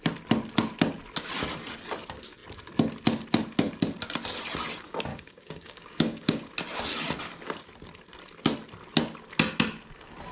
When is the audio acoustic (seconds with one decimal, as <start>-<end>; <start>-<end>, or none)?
0.0-5.1; 6.5-10.3